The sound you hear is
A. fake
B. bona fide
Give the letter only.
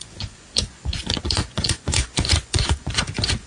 A